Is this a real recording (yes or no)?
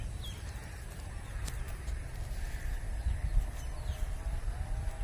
yes